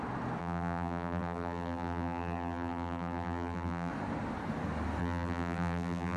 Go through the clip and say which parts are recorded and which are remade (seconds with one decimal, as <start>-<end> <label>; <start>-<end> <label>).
0.0-0.4 recorded; 0.4-3.9 remade; 3.9-5.0 recorded; 5.0-6.2 remade